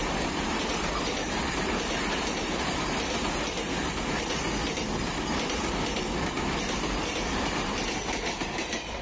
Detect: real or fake real